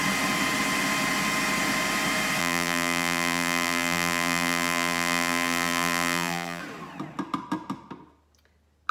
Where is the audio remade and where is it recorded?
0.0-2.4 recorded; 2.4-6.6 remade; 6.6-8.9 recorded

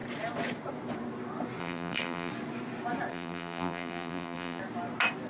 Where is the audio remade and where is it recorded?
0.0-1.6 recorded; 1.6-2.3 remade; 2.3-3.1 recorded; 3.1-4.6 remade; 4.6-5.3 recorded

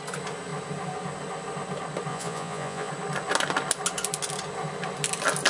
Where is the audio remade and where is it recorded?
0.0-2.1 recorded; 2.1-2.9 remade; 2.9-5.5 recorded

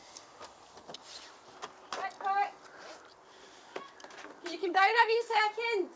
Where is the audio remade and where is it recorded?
0.0-4.6 recorded; 4.6-5.4 remade; 5.4-6.0 recorded